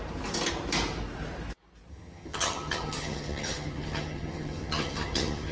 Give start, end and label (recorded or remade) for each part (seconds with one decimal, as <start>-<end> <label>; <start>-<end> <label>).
0.0-1.9 recorded; 1.9-5.5 remade